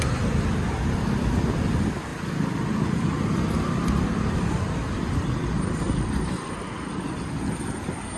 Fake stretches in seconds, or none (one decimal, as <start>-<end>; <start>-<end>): none